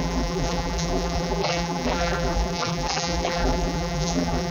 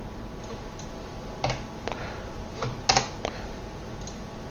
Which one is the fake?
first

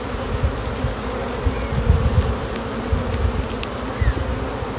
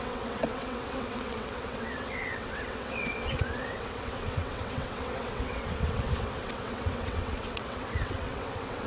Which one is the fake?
second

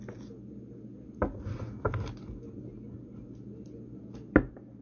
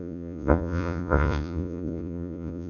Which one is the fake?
second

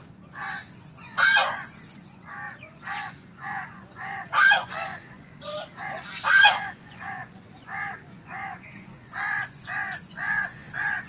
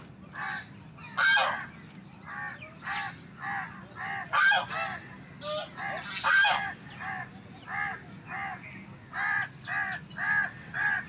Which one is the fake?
first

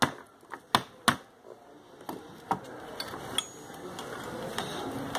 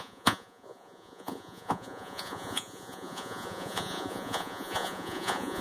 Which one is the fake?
second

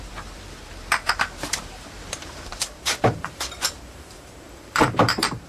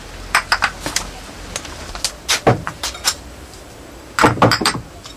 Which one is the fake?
first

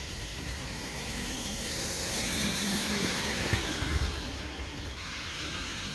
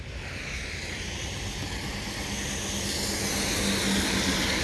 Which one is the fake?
first